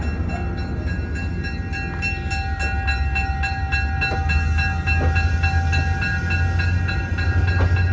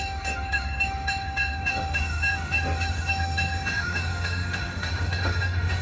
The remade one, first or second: second